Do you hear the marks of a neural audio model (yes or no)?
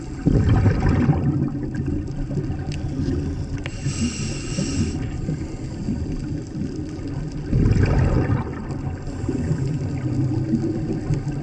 no